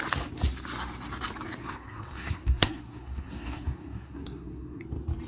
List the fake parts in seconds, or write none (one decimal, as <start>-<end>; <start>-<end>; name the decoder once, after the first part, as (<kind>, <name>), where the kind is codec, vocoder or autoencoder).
1.6-4.8 (codec, SNAC)